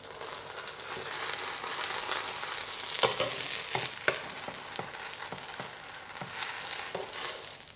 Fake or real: real